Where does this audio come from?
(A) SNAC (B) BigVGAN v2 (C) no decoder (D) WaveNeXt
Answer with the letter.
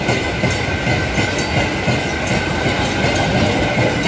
C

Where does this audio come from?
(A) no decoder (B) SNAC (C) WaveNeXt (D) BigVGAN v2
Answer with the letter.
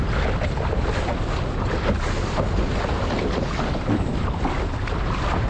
A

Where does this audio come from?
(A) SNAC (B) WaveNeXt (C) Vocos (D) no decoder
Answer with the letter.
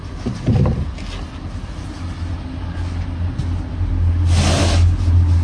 D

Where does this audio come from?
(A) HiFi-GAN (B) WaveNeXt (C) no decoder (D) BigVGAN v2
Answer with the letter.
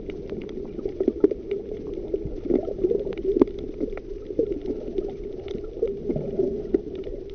C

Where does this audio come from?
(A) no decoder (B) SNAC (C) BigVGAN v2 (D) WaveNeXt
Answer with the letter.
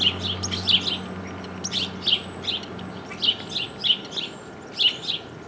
A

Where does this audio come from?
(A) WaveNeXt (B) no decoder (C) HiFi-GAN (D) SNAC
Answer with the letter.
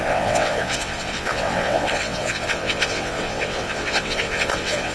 A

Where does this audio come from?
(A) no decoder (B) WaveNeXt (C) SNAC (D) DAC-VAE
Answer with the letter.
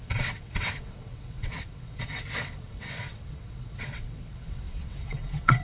B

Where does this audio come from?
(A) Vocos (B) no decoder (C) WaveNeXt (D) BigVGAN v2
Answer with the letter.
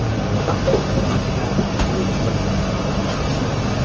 B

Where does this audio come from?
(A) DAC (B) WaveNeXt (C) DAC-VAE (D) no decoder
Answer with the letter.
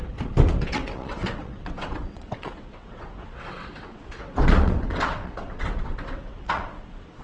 B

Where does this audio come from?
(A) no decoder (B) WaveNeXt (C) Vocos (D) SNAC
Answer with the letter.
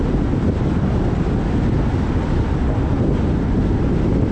A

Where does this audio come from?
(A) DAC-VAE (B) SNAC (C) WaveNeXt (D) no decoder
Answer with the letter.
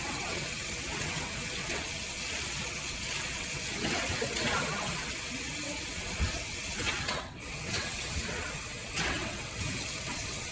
C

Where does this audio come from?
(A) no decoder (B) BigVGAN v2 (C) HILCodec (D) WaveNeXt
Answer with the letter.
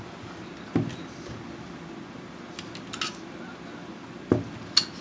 A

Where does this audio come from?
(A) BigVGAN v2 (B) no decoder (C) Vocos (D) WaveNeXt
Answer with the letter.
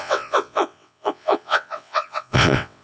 D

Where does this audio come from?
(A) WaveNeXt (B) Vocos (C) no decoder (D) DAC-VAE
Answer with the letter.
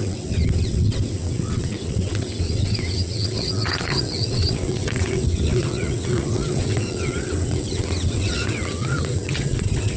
A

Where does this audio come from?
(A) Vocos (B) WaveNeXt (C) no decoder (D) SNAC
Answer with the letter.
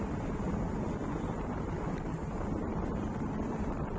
C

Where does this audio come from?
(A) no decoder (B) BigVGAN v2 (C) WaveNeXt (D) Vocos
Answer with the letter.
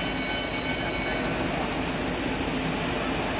A